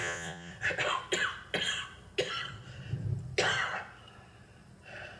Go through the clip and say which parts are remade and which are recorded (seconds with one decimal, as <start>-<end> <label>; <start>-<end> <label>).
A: 0.0-0.5 remade; 0.5-5.2 recorded